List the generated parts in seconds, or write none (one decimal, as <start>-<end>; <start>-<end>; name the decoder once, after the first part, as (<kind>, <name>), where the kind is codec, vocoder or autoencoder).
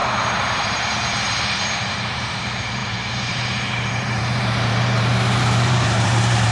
0.0-6.5 (vocoder, BigVGAN v2)